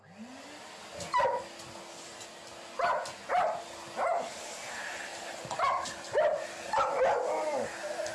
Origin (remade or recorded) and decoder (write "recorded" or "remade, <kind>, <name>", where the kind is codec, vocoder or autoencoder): recorded